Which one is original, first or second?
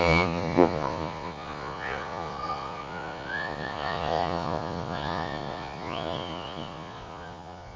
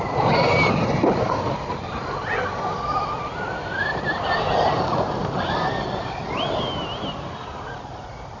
second